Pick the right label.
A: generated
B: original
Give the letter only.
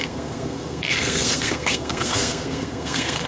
A